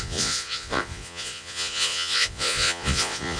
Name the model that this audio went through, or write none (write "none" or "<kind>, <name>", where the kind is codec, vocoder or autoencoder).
vocoder, Vocos